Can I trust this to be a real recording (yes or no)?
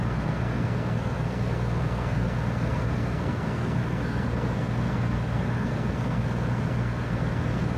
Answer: no